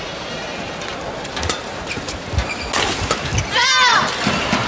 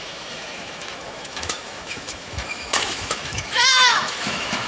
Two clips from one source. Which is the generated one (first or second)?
second